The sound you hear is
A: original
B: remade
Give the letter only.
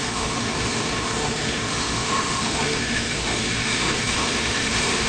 B